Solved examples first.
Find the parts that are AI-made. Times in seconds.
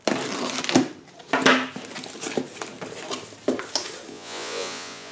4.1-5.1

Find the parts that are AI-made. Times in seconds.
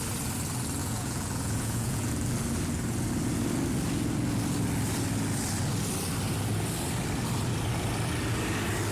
0.8-2.1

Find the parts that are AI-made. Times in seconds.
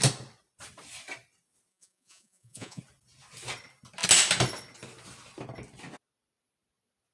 1.7-2.8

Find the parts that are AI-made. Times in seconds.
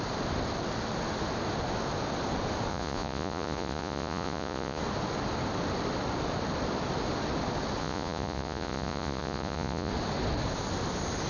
2.7-4.8; 7.8-9.9